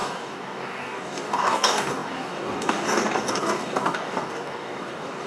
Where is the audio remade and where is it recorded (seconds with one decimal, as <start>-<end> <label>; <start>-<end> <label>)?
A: 0.0-5.3 remade

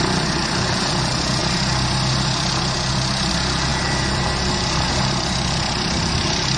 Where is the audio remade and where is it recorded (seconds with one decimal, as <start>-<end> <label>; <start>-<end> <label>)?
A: 0.0-6.6 recorded

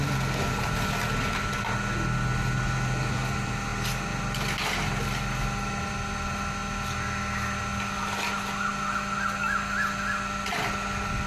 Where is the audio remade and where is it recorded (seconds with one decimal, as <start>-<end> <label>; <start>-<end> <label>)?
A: 0.0-11.3 recorded

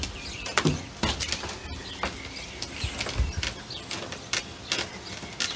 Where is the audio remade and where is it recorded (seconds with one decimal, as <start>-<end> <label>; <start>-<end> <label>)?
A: 0.0-5.6 recorded

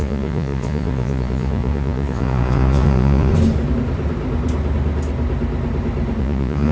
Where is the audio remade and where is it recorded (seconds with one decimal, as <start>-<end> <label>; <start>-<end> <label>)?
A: 0.0-3.3 remade; 3.3-6.2 recorded; 6.2-6.7 remade

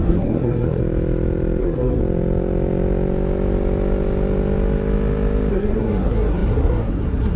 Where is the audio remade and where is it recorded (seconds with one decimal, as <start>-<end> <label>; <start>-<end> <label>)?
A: 0.0-0.8 remade; 0.8-1.6 recorded; 1.6-2.0 remade; 2.0-5.5 recorded; 5.5-7.4 remade

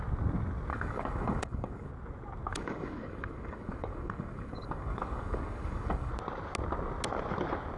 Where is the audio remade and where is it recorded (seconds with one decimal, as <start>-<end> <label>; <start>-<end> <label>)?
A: 0.0-0.7 recorded; 0.7-1.9 remade; 1.9-2.5 recorded; 2.5-6.1 remade; 6.1-7.8 recorded

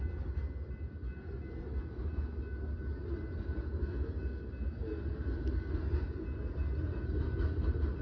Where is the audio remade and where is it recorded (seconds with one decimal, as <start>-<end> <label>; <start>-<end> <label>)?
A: 0.0-8.0 recorded